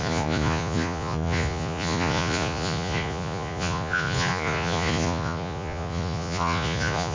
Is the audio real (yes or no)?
no